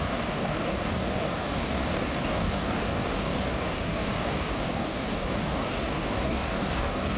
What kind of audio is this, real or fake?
fake